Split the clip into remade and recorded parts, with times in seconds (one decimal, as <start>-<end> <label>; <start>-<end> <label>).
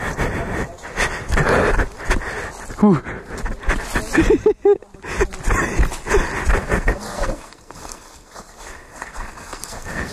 0.0-6.6 recorded; 6.6-10.1 remade